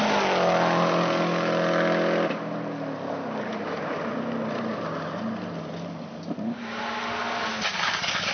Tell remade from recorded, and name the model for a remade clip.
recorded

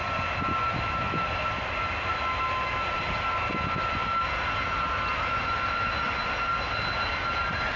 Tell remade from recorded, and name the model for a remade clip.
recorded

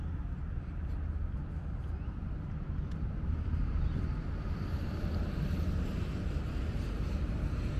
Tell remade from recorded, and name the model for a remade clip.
recorded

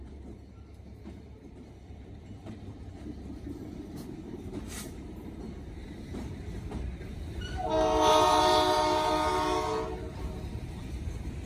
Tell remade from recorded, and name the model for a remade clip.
remade, vocoder, BigVGAN v2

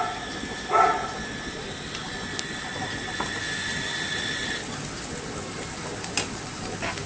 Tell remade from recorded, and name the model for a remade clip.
recorded